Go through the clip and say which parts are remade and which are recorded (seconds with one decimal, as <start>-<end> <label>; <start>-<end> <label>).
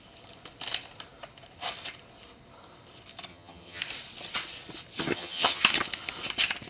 0.0-3.3 recorded; 3.3-3.8 remade; 3.8-5.0 recorded; 5.0-5.6 remade; 5.6-6.7 recorded